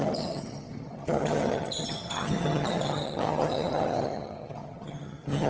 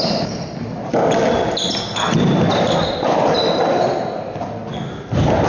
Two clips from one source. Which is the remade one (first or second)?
first